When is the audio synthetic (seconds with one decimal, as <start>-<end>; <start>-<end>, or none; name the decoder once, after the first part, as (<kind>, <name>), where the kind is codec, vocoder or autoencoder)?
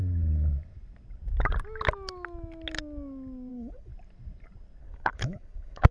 3.5-3.9 (codec, HILCodec); 4.8-5.9